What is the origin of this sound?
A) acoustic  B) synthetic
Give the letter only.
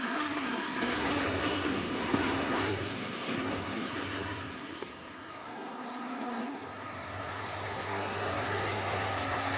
B